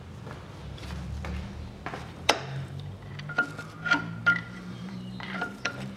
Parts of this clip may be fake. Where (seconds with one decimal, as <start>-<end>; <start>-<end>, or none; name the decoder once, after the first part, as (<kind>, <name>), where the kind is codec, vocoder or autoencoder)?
2.0-3.1 (vocoder, BigVGAN v2); 4.2-6.0